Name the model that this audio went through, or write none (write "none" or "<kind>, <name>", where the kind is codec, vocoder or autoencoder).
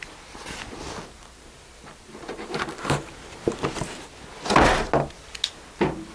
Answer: none